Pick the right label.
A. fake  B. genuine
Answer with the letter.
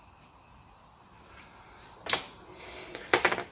B